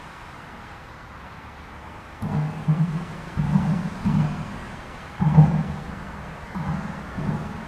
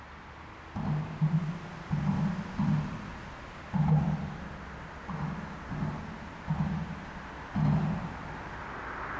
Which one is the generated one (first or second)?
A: first